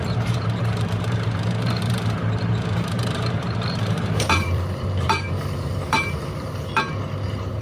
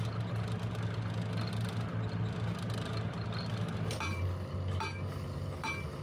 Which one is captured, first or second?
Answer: second